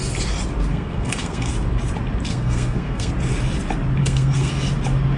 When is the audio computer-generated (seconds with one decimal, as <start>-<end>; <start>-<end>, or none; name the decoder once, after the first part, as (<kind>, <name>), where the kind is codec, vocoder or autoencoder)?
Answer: 0.7-1.5 (codec, SNAC); 2.3-3.1; 4.0-4.5